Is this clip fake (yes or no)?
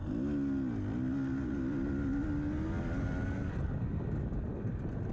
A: no